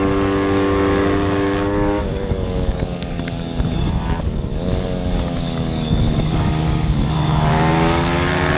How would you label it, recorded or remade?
remade